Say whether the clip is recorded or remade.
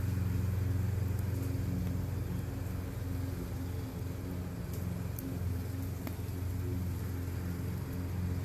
recorded